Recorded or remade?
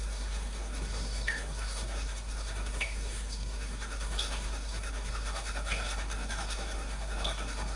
remade